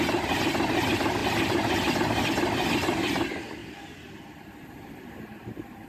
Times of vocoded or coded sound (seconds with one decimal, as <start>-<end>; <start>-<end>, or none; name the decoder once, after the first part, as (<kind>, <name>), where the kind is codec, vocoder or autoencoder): 3.6-5.9 (vocoder, BigVGAN v2)